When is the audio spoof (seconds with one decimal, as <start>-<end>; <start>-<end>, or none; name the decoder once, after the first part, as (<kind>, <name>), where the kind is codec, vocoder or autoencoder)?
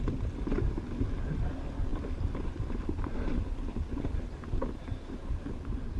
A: none